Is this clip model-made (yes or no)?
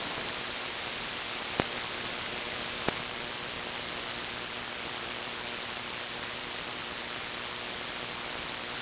no